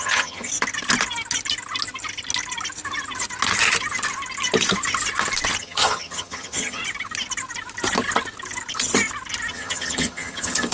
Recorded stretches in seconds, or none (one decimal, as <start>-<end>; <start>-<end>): 0.5-5.6; 6.8-9.5